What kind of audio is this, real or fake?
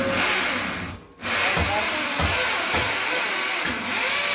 real